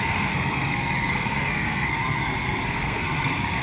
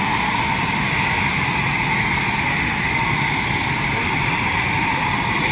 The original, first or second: second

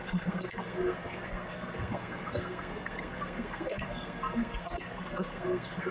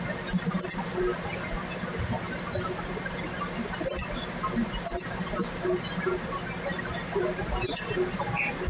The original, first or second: second